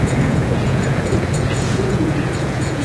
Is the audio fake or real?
fake